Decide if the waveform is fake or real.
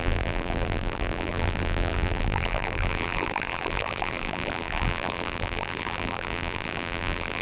fake